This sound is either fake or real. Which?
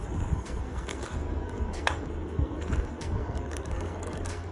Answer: fake